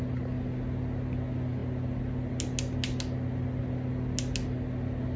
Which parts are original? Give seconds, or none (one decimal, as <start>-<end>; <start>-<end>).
0.0-5.2